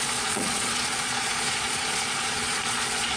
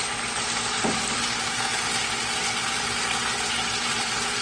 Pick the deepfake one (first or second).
first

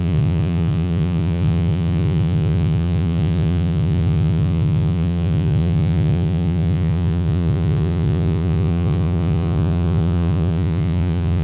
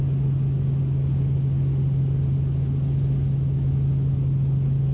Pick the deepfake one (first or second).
first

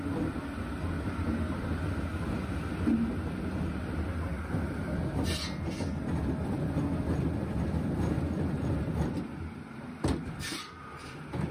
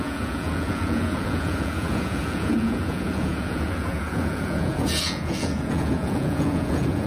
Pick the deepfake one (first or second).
second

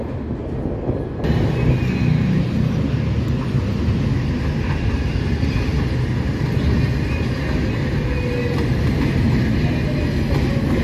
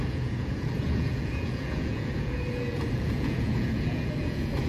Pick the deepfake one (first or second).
second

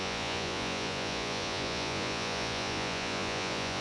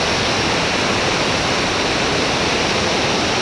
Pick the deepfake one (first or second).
first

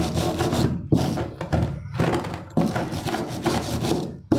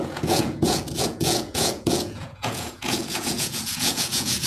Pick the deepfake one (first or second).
second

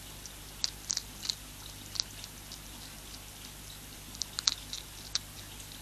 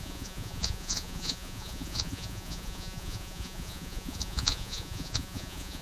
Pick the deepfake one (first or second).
second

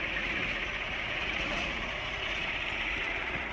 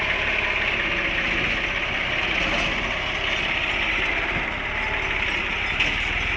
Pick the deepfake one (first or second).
first